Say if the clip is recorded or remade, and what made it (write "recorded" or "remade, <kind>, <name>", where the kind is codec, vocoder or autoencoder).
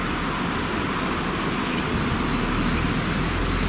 recorded